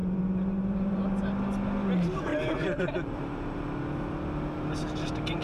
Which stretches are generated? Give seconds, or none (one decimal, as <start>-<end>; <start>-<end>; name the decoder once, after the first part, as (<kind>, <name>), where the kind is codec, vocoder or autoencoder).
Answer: 0.0-1.0 (vocoder, BigVGAN v2); 2.3-3.7